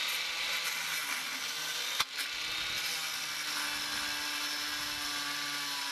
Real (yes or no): yes